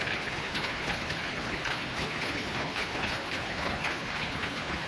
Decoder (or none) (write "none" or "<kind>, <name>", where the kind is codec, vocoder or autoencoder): codec, HILCodec